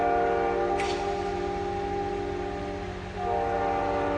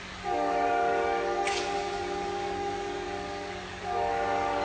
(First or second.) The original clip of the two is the first